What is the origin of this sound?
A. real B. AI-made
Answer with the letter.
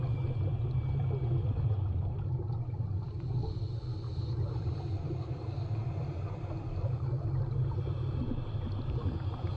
A